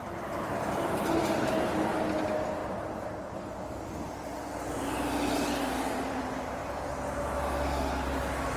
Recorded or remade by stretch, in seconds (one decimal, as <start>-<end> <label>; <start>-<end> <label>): 0.0-2.6 recorded; 2.6-4.8 remade; 4.8-8.6 recorded